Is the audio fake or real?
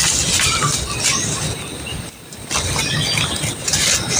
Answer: real